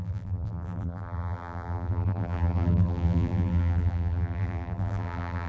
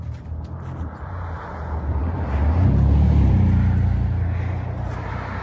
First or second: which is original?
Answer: second